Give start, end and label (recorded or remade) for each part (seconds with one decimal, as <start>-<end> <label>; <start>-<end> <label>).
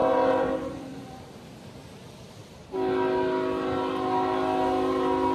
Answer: 0.0-1.3 remade; 1.3-5.3 recorded